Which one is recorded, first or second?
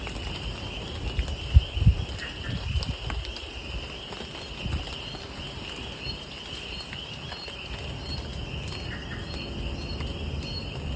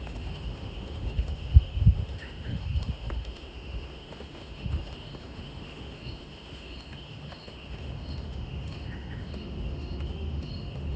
first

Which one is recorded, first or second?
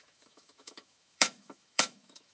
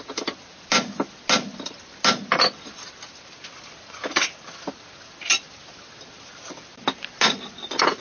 second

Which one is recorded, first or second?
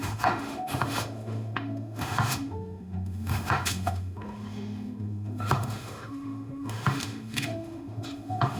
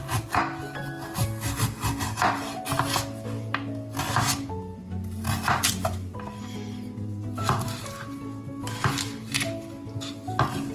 second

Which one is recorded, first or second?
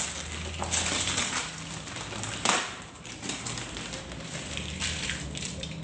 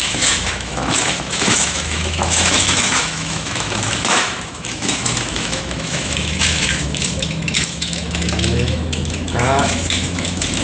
first